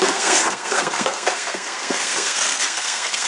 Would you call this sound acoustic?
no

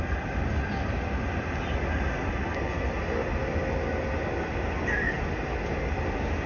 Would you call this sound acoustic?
yes